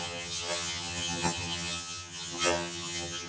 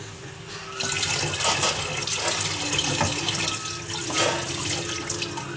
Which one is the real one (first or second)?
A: second